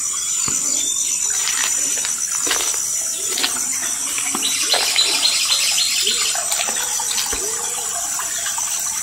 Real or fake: real